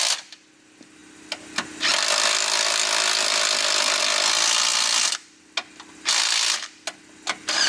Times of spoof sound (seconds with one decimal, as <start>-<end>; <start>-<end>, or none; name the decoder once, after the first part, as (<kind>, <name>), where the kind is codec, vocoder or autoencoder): none